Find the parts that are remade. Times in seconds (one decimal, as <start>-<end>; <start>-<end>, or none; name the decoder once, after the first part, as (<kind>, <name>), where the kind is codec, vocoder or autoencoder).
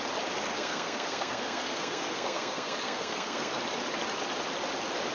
0.5-3.6 (codec, SNAC)